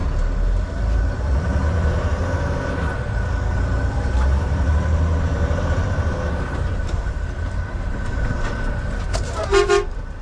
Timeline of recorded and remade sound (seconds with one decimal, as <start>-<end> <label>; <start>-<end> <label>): 0.0-1.0 recorded; 1.0-2.2 remade; 2.2-3.8 recorded; 3.8-10.2 remade